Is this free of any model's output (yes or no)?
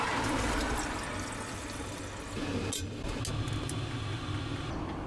yes